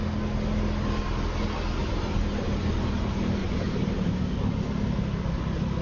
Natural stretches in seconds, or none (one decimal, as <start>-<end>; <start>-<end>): 0.0-1.8; 2.7-3.4; 4.2-5.8